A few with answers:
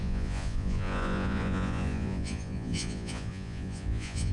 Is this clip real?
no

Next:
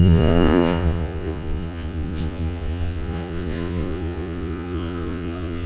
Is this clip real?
no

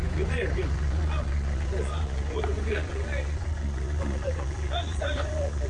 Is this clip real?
no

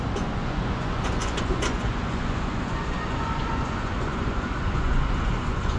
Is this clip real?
no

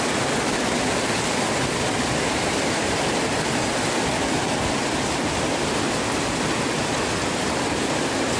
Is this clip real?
yes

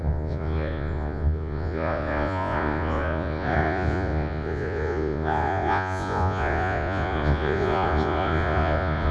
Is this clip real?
no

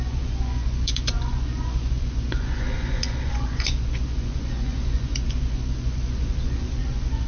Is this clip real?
no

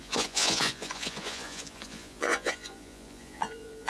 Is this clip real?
no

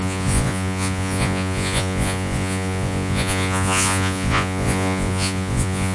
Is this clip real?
no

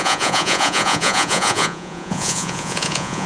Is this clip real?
no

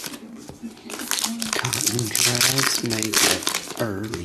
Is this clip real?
yes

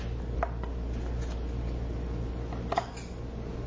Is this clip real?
yes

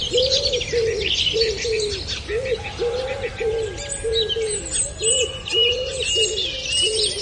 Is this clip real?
yes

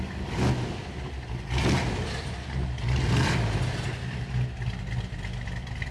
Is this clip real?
yes